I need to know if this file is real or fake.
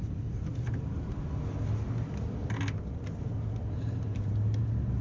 real